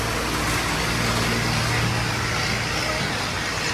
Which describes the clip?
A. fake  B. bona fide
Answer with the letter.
B